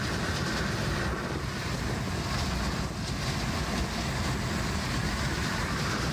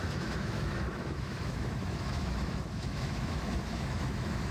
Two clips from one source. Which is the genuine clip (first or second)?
first